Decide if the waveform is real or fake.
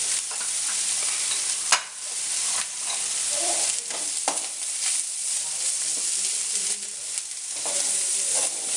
fake